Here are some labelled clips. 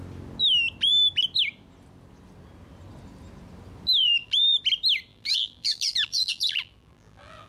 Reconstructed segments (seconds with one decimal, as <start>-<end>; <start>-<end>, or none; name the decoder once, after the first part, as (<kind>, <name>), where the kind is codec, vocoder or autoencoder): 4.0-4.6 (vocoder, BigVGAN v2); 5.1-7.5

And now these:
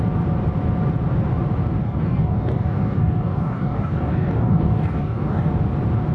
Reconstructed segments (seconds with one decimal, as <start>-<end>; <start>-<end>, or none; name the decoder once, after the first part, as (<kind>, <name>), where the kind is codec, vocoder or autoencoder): 1.8-5.5 (codec, DAC)

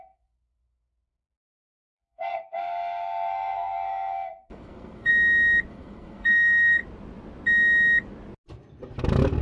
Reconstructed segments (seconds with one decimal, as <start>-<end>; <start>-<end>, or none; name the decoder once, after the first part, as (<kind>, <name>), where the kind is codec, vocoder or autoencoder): 0.0-5.1 (codec, SNAC); 5.7-6.8

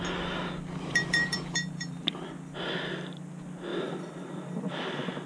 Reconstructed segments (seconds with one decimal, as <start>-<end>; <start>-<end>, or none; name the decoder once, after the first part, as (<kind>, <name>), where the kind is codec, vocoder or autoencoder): 0.9-2.3 (vocoder, BigVGAN v2); 3.7-4.8

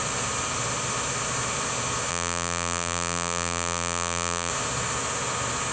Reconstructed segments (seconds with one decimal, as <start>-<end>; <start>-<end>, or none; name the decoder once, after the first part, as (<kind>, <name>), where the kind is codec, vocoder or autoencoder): 2.1-4.5 (vocoder, BigVGAN v2)

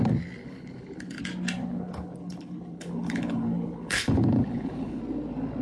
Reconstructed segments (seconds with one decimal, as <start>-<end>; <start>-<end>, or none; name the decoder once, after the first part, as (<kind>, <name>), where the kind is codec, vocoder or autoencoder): 0.4-1.2 (codec, HILCodec); 1.6-5.0

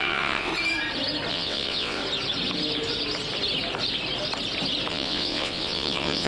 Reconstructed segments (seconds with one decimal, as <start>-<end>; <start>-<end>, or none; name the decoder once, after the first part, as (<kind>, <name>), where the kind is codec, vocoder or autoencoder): 0.0-0.5 (vocoder, WaveNeXt); 1.3-2.0; 4.9-6.3

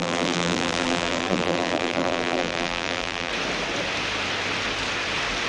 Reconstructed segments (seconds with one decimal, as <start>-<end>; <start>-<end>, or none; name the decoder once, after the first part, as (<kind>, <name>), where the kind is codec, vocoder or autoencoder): 0.0-3.3 (vocoder, BigVGAN v2)